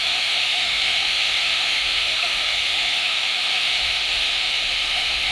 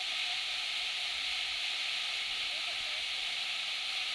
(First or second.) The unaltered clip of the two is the second